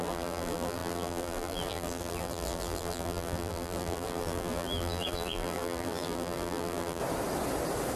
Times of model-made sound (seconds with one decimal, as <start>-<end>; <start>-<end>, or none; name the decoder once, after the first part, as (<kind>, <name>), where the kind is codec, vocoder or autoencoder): 0.0-7.0 (vocoder, BigVGAN v2)